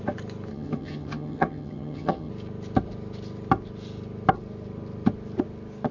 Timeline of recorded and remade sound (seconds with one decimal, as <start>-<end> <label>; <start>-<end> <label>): 0.0-0.5 recorded; 0.5-2.3 remade; 2.3-5.9 recorded